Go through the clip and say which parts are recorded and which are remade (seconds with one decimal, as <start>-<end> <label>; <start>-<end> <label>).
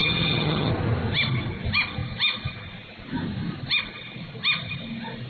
0.0-0.7 remade; 0.7-5.3 recorded